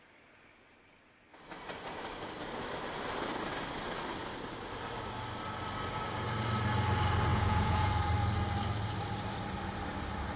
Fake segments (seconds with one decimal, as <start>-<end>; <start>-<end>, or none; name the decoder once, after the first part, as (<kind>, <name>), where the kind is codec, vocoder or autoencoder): 7.3-7.9 (vocoder, Vocos)